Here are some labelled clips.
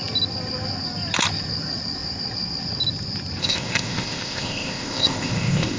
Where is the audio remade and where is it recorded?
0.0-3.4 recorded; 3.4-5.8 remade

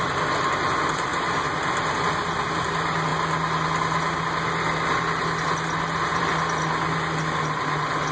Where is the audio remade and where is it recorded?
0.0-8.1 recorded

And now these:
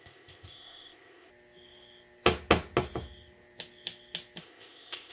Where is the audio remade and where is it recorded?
0.0-1.3 remade; 1.3-4.4 recorded; 4.4-5.1 remade

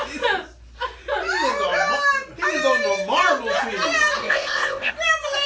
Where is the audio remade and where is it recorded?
0.0-4.2 recorded; 4.2-4.9 remade; 4.9-5.5 recorded

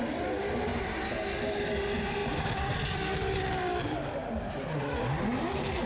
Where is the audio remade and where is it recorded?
0.0-5.9 recorded

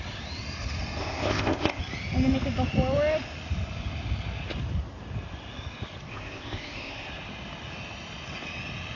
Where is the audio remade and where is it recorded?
0.0-1.0 recorded; 1.0-1.8 remade; 1.8-6.1 recorded; 6.1-7.1 remade; 7.1-9.0 recorded

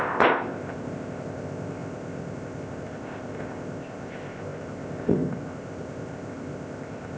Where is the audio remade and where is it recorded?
0.0-7.2 remade

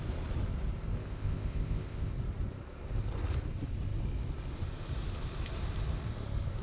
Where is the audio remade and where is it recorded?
0.0-1.0 recorded; 1.0-2.1 remade; 2.1-6.6 recorded